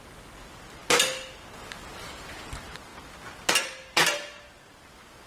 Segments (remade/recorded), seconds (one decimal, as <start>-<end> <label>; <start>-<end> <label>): 0.0-5.3 recorded